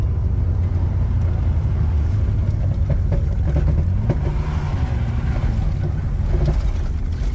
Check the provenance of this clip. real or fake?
real